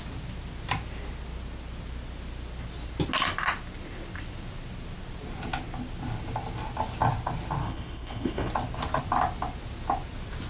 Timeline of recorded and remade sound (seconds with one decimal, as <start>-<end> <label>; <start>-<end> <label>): 0.0-7.6 recorded; 7.6-8.5 remade; 8.5-10.5 recorded

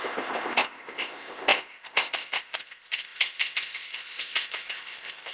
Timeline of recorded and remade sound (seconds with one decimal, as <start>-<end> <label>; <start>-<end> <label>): 0.0-5.3 remade

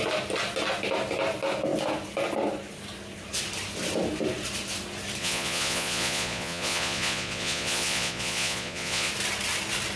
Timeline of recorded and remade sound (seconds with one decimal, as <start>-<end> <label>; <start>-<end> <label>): 0.0-5.2 recorded; 5.2-9.1 remade; 9.1-10.0 recorded

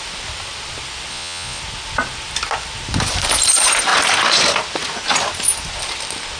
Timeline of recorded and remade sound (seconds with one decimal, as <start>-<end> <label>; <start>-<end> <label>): 0.0-1.1 recorded; 1.1-1.6 remade; 1.6-6.4 recorded

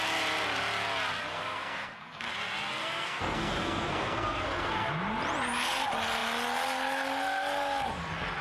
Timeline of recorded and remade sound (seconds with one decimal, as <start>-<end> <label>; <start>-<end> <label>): 0.0-1.3 recorded; 1.3-2.3 remade; 2.3-2.8 recorded; 2.8-4.9 remade; 4.9-8.4 recorded